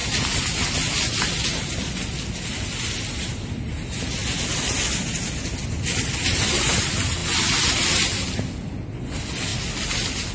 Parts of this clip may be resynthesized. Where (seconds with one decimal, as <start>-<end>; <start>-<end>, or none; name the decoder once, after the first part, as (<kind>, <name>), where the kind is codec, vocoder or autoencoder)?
none